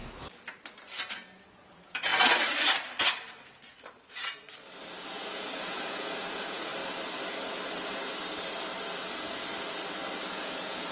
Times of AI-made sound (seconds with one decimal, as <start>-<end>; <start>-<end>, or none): 1.1-2.1; 5.1-6.7; 9.1-9.5; 10.3-10.9